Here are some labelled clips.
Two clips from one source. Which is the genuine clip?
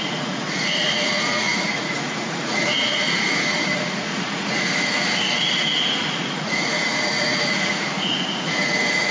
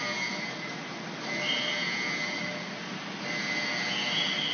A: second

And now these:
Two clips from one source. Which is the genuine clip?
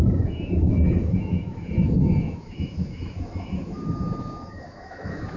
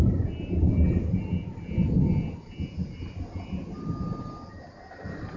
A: second